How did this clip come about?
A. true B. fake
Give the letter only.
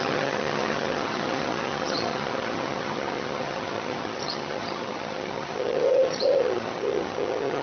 B